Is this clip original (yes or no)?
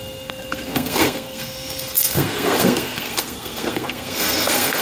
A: no